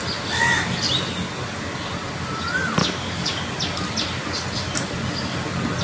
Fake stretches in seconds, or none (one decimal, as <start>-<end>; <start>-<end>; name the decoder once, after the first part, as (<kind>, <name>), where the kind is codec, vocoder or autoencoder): 2.8-3.4 (codec, DAC)